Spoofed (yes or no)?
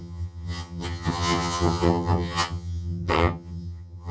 yes